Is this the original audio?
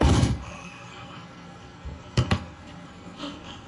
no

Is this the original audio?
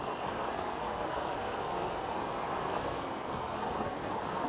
no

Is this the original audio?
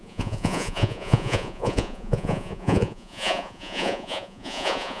no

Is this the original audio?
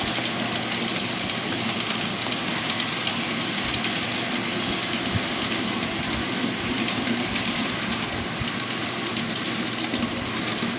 yes